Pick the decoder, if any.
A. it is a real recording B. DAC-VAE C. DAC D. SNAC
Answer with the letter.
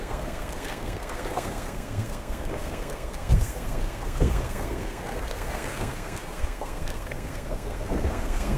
D